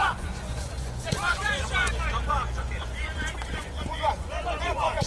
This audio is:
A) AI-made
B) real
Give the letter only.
A